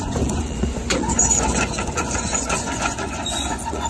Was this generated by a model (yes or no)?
yes